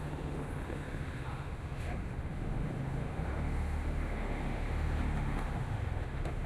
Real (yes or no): no